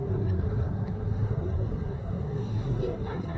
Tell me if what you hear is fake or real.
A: fake